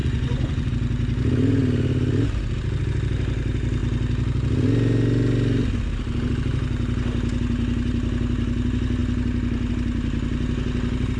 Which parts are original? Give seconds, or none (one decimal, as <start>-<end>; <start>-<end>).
0.7-11.2